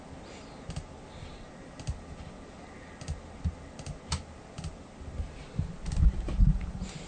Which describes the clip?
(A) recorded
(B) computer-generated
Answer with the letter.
A